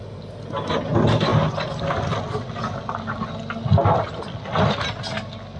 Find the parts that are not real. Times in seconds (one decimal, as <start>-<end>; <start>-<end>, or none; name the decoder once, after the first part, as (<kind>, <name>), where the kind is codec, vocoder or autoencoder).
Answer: none